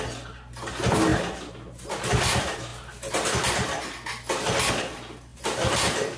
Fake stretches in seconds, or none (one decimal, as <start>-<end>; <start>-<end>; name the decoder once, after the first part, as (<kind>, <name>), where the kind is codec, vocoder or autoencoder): 5.3-6.2 (vocoder, BigVGAN v2)